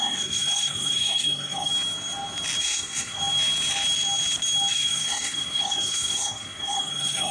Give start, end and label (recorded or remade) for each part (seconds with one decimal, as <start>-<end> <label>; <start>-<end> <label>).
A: 0.0-1.7 remade; 1.7-2.6 recorded; 2.6-3.2 remade; 3.2-4.7 recorded; 4.7-7.3 remade